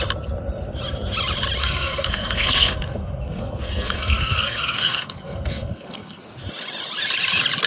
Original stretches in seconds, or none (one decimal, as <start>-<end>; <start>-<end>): 0.0-1.6; 6.2-7.7